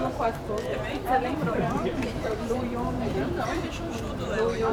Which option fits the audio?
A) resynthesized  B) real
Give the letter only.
A